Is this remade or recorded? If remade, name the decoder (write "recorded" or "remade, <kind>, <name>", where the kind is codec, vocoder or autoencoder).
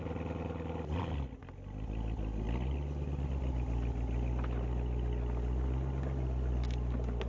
recorded